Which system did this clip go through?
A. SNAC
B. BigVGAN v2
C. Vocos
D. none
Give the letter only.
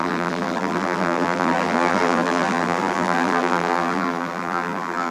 B